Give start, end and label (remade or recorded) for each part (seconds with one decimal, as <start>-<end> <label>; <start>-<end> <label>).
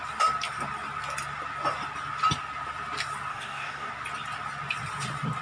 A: 0.0-3.3 recorded; 3.3-3.9 remade; 3.9-5.4 recorded